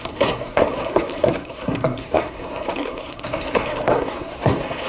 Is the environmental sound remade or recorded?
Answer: remade